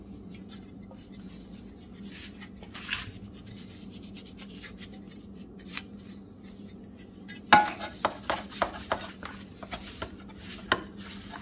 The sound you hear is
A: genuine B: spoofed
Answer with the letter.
A